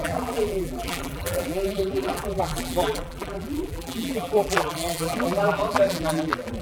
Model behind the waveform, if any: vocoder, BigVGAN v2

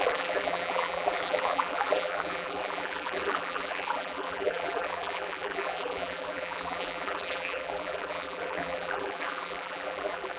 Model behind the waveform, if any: vocoder, BigVGAN v2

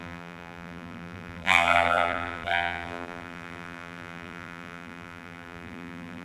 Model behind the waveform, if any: vocoder, BigVGAN v2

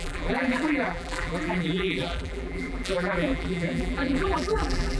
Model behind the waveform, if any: vocoder, BigVGAN v2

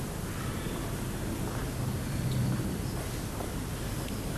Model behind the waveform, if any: none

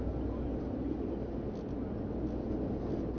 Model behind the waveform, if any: none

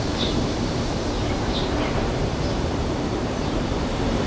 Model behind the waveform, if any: vocoder, BigVGAN v2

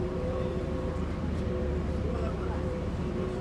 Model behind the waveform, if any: vocoder, BigVGAN v2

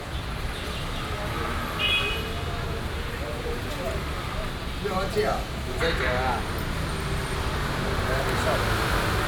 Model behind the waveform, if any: none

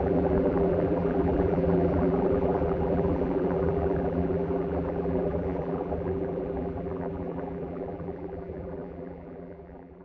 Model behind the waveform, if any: vocoder, BigVGAN v2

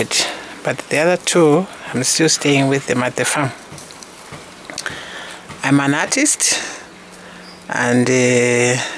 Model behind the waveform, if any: none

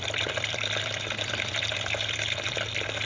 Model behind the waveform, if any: vocoder, BigVGAN v2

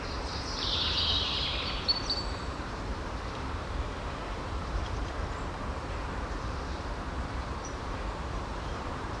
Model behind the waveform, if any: vocoder, BigVGAN v2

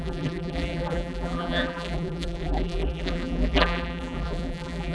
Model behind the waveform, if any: vocoder, BigVGAN v2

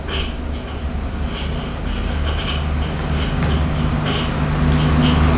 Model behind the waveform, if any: none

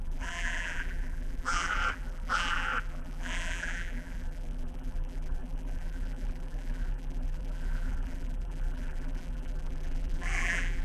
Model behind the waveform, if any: vocoder, BigVGAN v2